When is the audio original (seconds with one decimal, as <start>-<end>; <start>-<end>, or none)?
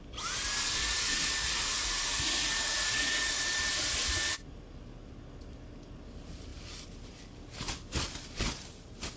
0.0-0.8; 3.4-9.2